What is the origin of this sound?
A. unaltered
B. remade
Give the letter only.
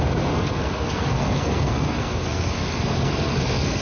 B